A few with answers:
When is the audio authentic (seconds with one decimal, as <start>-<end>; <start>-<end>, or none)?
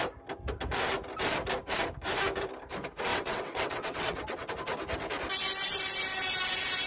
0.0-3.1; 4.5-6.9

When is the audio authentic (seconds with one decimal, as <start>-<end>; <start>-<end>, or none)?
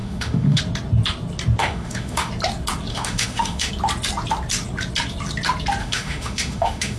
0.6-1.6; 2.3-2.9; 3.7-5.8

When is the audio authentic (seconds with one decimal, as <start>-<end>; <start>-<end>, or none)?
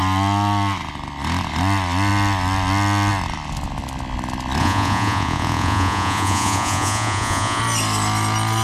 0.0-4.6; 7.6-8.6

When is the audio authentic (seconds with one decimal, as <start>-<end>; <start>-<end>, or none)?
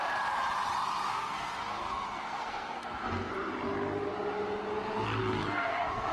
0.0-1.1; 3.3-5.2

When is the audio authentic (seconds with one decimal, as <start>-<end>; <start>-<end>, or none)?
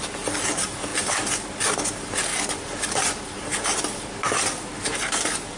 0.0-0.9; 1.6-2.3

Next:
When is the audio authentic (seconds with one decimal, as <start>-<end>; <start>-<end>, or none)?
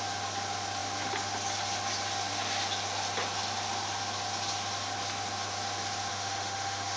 0.0-6.1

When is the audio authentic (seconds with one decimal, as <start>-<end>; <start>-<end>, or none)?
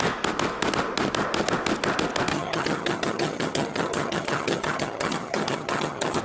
0.0-2.3